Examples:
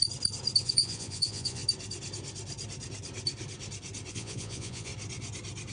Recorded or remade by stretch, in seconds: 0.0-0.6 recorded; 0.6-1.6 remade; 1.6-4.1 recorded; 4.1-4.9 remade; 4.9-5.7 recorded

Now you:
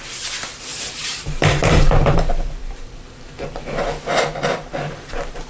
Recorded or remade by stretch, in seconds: 0.0-0.7 recorded; 0.7-4.0 remade; 4.0-5.5 recorded

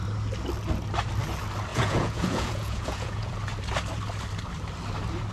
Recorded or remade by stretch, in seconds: 0.0-1.7 recorded; 1.7-3.3 remade; 3.3-5.3 recorded